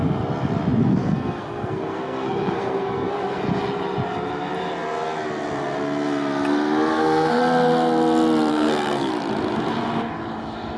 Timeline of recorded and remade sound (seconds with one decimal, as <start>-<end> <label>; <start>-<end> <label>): 0.0-1.0 recorded; 1.0-3.4 remade; 3.4-6.9 recorded; 6.9-7.4 remade; 7.4-8.5 recorded; 8.5-9.1 remade; 9.1-10.8 recorded